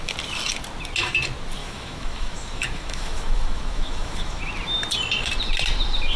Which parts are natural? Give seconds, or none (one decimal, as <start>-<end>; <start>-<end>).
0.0-1.6; 4.4-6.2